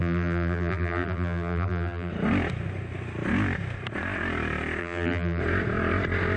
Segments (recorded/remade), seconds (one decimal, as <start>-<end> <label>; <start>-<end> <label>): 0.0-2.1 remade; 2.1-4.8 recorded; 4.8-5.4 remade; 5.4-6.4 recorded